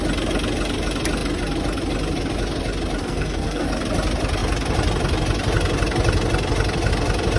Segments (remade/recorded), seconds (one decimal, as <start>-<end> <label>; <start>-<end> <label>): 0.0-3.0 recorded; 3.0-3.8 remade; 3.8-7.4 recorded